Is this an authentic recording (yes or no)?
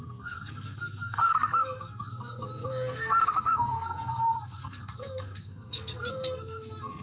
no